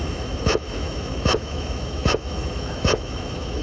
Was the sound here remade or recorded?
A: remade